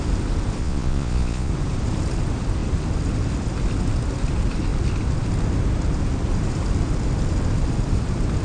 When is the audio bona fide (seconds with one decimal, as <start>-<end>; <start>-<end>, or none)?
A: 0.0-0.6; 1.5-8.4